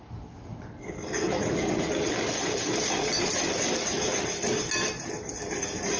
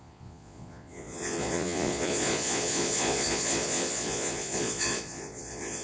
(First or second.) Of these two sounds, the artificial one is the second